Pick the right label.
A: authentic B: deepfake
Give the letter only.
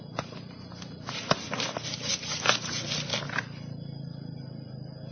A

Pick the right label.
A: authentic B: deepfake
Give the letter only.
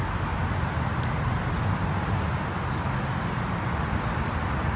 A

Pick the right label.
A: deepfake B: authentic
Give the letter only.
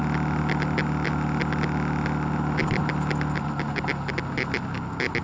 B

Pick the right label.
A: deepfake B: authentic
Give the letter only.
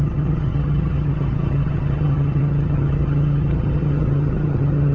A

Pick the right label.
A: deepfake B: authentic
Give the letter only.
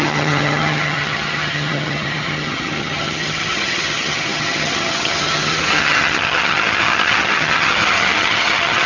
A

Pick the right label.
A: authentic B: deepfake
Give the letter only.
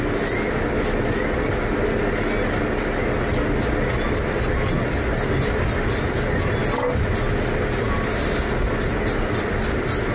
A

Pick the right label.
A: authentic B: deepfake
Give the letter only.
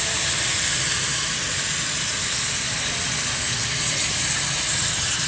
A